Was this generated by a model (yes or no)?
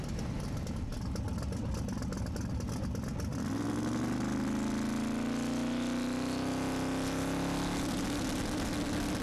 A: no